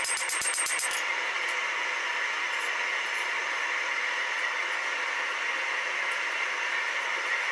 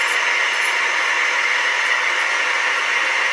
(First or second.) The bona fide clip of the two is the second